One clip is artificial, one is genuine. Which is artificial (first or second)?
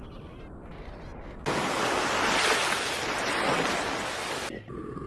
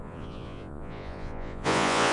second